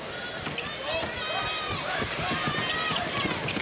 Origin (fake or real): real